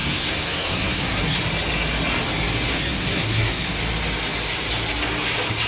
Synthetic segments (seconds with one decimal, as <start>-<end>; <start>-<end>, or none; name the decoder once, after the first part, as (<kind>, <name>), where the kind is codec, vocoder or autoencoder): 0.0-1.4 (codec, SNAC); 2.7-3.8